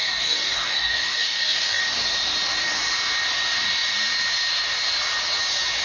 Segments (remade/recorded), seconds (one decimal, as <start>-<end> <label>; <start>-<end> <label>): 0.0-1.8 remade; 1.8-5.8 recorded

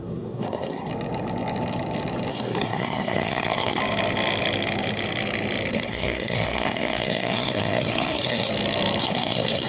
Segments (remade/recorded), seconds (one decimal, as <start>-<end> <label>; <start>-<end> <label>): 0.0-0.9 remade; 0.9-2.3 recorded; 2.3-3.8 remade; 3.8-5.7 recorded; 5.7-8.5 remade; 8.5-9.0 recorded; 9.0-9.7 remade

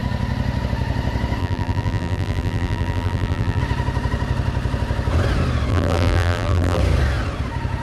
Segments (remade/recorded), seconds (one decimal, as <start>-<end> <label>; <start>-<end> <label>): 0.0-1.4 recorded; 1.4-3.6 remade; 3.6-5.7 recorded; 5.7-6.8 remade; 6.8-7.8 recorded

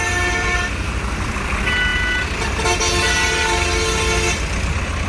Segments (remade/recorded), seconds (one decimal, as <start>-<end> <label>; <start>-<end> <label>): 0.0-5.1 recorded

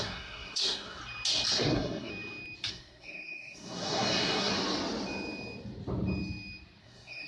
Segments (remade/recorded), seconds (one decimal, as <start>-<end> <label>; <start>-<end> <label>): 0.0-1.0 remade; 1.0-1.5 recorded; 1.5-2.1 remade; 2.1-2.7 recorded; 2.7-4.5 remade; 4.5-6.8 recorded; 6.8-7.3 remade